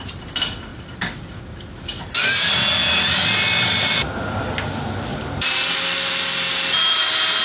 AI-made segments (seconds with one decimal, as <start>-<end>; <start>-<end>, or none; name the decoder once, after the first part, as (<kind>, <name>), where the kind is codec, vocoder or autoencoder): none